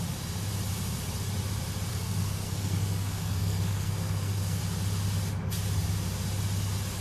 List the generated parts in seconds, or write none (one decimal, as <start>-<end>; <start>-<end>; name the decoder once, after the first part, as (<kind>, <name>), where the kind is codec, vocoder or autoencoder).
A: 1.9-4.6 (codec, SNAC)